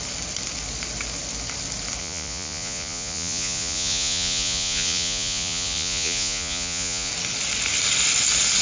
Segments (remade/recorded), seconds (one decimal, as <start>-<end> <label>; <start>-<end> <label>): 0.0-2.0 recorded; 2.0-7.1 remade; 7.1-8.6 recorded